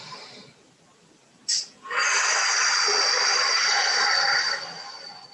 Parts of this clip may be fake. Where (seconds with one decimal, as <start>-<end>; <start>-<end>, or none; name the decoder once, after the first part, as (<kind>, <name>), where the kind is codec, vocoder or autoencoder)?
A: 0.0-1.4 (vocoder, BigVGAN v2); 2.6-5.3